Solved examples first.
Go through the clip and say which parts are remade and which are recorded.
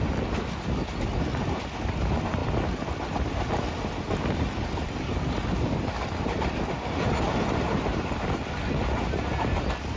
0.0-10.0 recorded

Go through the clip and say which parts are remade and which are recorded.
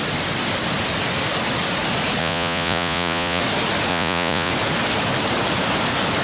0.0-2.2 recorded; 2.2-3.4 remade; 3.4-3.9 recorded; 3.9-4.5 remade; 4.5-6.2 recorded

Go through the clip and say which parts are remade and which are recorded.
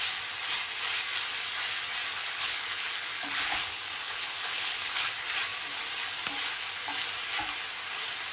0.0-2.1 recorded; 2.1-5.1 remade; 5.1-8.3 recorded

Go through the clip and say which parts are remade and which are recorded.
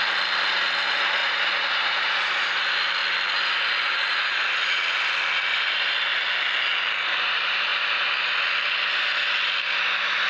0.0-1.2 recorded; 1.2-2.6 remade; 2.6-10.3 recorded